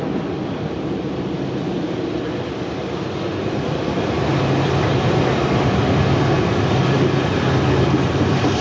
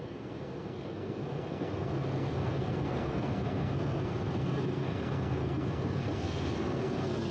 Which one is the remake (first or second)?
second